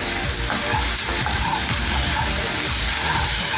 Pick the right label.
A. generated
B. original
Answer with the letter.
A